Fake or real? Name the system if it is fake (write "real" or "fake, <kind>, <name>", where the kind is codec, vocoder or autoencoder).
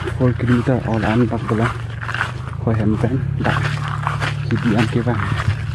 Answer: real